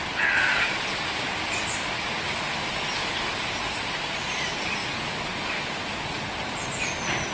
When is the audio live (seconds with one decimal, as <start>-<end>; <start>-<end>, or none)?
0.0-7.3